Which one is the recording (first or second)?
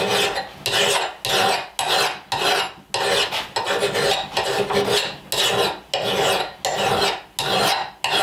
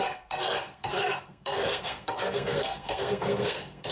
first